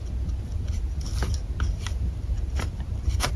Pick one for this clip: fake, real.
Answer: real